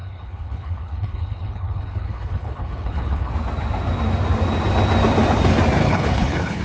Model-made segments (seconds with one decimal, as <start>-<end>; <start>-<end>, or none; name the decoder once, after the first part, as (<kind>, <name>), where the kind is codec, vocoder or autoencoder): 0.0-3.3 (codec, HILCodec); 5.8-6.6